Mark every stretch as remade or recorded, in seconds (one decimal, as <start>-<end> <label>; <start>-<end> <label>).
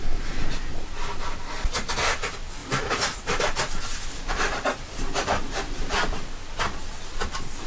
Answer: 0.0-2.6 recorded; 2.6-3.2 remade; 3.2-4.1 recorded; 4.1-6.3 remade; 6.3-7.7 recorded